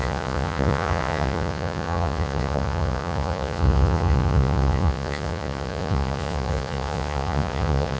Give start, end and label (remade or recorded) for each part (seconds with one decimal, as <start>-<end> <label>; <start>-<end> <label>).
0.0-8.0 remade